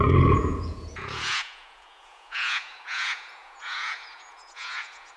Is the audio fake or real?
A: fake